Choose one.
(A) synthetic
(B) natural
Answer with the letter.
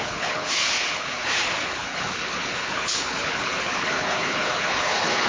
A